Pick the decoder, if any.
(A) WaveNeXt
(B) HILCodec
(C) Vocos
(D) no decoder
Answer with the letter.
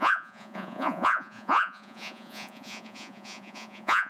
C